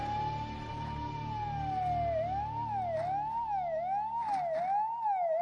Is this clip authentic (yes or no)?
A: yes